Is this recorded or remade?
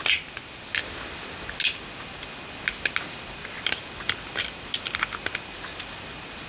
recorded